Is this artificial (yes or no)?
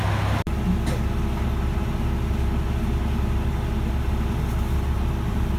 no